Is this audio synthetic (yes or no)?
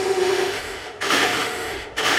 yes